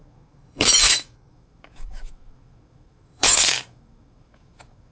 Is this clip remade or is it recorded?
remade